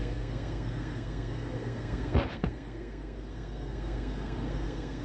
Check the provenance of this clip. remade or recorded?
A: remade